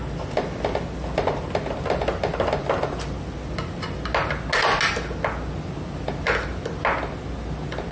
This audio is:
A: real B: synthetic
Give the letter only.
A